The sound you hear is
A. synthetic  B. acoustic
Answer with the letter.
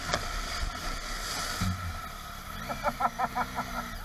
B